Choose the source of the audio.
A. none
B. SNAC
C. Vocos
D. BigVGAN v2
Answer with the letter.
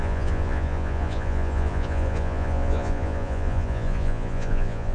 C